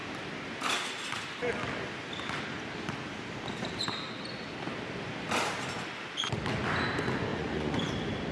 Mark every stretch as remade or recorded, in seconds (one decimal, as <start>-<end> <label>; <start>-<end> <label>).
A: 0.0-7.3 recorded; 7.3-7.9 remade; 7.9-8.3 recorded